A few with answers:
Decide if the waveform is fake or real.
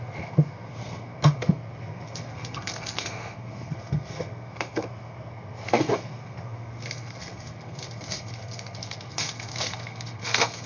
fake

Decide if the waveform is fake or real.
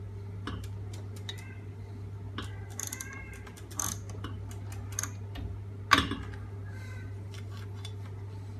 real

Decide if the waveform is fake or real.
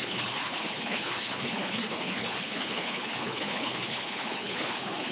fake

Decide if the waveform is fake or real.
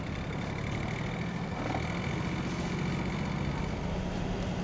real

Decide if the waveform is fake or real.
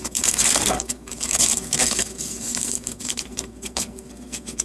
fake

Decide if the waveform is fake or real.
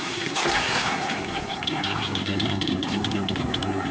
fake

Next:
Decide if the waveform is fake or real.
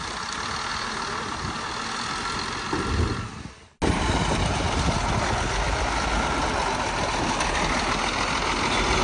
real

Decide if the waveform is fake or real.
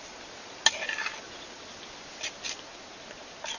real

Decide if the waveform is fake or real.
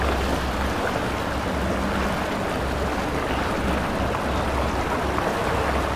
real